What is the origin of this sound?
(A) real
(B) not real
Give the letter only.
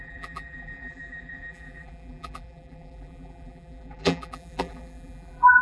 B